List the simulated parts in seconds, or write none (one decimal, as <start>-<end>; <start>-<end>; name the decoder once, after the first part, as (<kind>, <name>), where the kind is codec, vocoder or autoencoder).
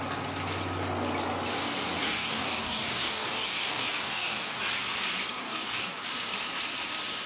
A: 2.0-4.6 (codec, DAC); 5.4-6.1